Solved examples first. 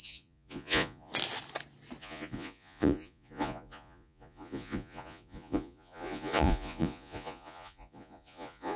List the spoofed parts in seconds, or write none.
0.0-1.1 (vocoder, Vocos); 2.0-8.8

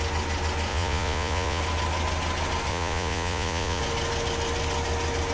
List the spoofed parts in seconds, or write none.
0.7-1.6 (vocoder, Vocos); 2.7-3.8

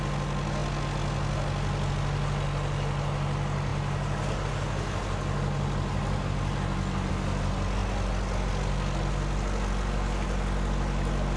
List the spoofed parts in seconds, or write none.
none

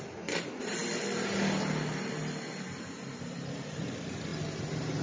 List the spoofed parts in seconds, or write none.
none